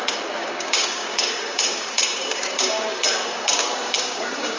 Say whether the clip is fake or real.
fake